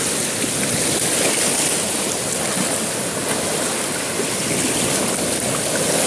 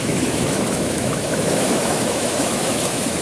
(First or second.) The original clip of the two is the first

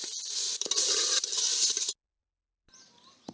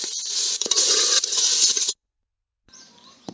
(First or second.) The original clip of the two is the first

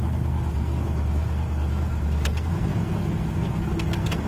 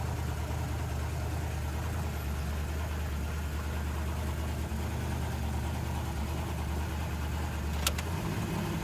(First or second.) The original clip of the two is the second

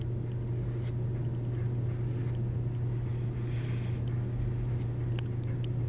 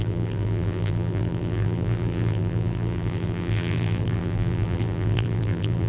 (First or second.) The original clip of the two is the first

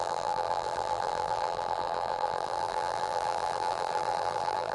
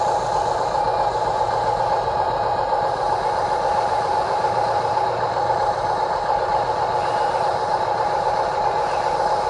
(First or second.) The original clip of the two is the second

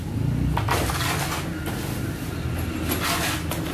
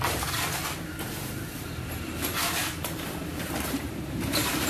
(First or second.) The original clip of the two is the first